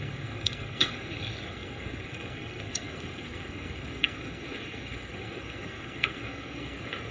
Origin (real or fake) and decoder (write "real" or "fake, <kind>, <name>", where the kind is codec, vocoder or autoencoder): fake, codec, SNAC